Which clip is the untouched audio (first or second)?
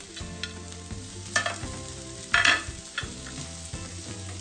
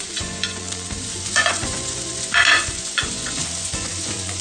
first